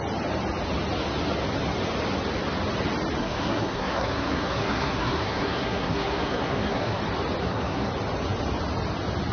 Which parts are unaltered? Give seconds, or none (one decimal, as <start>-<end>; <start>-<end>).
0.0-3.2; 7.0-7.4; 7.9-9.3